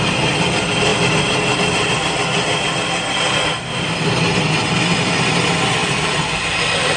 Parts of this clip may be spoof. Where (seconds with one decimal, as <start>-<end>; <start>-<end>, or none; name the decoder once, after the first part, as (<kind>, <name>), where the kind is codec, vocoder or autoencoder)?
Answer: 5.8-7.0 (vocoder, BigVGAN v2)